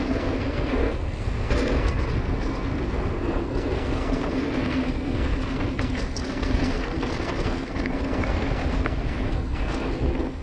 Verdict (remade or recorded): remade